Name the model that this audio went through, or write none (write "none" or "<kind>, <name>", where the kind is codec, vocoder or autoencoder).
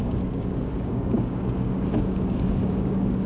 codec, DAC